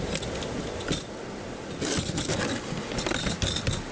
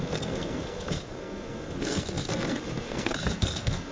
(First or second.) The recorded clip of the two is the first